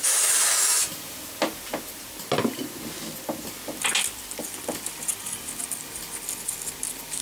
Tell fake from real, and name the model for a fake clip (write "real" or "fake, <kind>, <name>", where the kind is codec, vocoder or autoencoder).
real